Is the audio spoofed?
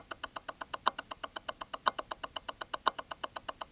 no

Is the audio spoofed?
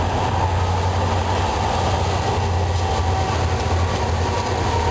no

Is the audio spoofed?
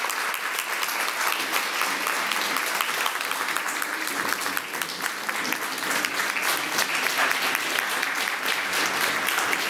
no